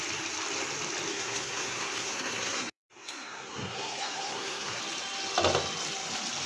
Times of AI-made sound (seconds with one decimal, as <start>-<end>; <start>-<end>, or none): 1.1-4.8

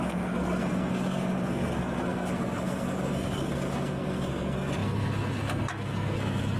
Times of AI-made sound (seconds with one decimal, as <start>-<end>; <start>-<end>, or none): 0.0-6.6

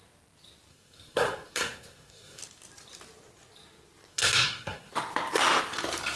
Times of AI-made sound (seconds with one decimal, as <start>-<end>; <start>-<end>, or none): 0.7-2.4; 4.1-4.9

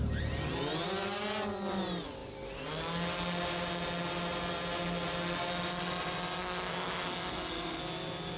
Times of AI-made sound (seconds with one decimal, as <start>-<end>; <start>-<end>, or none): 6.4-7.8

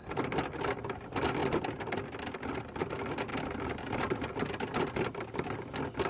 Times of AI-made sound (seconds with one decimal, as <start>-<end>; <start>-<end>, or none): none